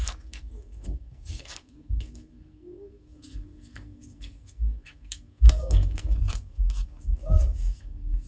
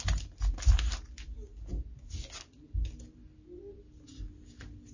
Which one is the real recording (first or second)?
second